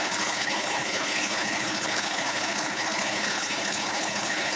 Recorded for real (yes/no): no